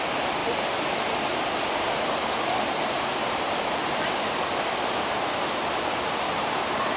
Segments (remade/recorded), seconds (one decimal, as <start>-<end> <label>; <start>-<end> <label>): 0.0-3.2 recorded; 3.2-4.1 remade; 4.1-7.0 recorded